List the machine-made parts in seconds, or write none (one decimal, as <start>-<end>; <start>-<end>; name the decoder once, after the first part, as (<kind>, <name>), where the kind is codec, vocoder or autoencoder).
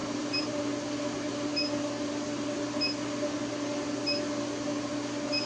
0.0-0.7 (vocoder, BigVGAN v2)